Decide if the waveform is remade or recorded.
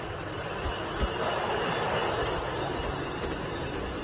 recorded